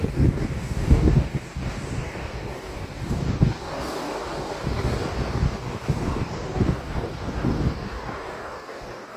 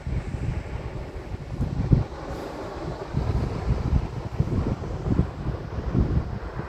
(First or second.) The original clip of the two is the second